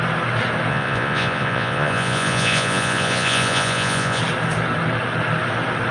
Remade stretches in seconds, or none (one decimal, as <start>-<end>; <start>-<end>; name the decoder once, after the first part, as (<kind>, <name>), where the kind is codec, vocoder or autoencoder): 0.7-4.2 (vocoder, Vocos)